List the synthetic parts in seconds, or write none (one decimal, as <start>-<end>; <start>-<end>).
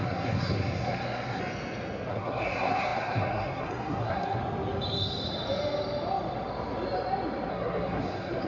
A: 0.0-1.4; 2.1-4.4; 7.5-8.5